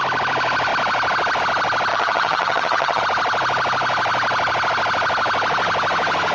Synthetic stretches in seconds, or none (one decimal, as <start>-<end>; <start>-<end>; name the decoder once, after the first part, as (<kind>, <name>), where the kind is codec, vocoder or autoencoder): 1.9-3.0 (vocoder, HiFi-GAN)